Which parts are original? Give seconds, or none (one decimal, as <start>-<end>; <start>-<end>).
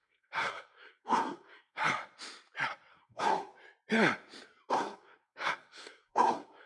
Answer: 1.8-2.9; 3.5-4.7